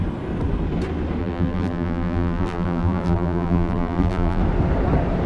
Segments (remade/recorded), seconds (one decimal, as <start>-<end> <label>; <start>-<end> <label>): 0.0-1.2 recorded; 1.2-4.4 remade; 4.4-5.3 recorded